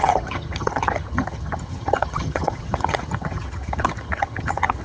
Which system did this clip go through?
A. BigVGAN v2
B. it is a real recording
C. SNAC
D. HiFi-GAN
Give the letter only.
D